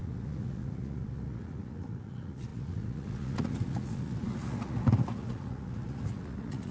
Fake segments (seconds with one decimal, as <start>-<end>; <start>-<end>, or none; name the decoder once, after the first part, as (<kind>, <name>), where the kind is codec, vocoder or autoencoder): 0.0-6.7 (vocoder, Vocos)